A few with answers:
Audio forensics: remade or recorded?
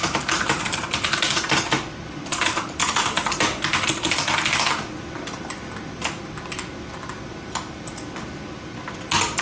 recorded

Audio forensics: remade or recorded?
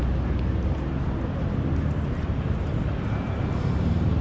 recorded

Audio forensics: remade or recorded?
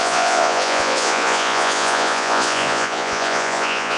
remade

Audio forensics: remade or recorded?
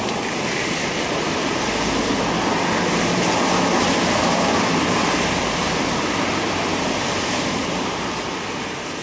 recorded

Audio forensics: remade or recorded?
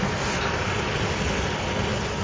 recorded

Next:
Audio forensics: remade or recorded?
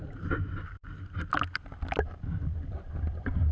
remade